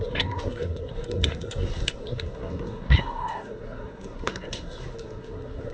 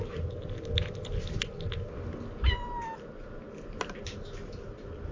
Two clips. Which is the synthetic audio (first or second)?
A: first